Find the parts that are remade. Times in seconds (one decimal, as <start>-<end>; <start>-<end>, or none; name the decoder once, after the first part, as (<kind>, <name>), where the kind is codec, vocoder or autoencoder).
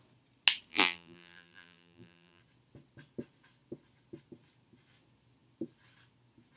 0.7-2.4 (vocoder, BigVGAN v2)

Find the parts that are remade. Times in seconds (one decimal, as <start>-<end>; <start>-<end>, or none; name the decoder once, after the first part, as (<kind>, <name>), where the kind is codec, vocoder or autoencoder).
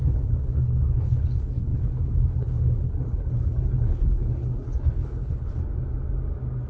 0.0-5.6 (codec, HILCodec)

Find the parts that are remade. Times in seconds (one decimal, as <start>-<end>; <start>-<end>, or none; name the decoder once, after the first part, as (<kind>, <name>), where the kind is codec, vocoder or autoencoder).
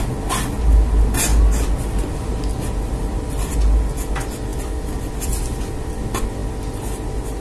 none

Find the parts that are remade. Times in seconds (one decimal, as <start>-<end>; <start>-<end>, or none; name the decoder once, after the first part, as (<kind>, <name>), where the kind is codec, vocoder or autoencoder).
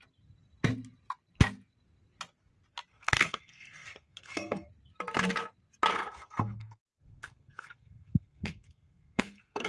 2.9-4.7 (codec, SNAC); 5.9-9.7